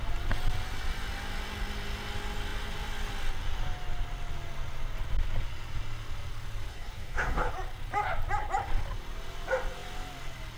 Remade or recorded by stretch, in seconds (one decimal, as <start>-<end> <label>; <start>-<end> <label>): 0.0-6.7 recorded; 6.7-7.5 remade; 7.5-10.6 recorded